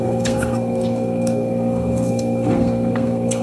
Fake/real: fake